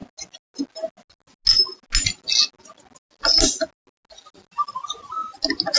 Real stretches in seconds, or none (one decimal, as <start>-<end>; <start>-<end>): 0.0-5.8